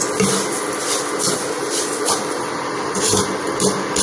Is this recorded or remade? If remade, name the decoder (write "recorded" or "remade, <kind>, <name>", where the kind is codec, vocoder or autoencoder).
recorded